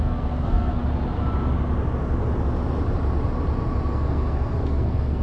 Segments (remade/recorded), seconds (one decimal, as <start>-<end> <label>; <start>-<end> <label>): 0.0-0.8 remade; 0.8-3.9 recorded; 3.9-5.2 remade